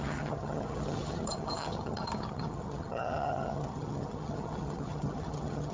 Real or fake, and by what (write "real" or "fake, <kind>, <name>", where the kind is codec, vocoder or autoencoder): fake, vocoder, HiFi-GAN